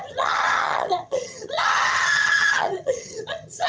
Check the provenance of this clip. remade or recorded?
remade